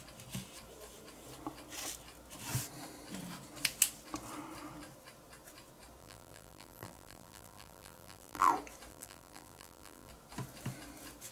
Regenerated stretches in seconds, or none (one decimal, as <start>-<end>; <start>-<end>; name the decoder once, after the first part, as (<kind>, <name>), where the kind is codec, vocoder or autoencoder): 6.0-8.5 (vocoder, BigVGAN v2); 8.9-10.1